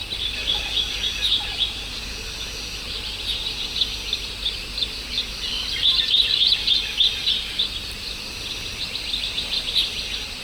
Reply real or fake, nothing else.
real